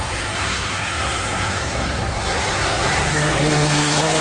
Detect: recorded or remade remade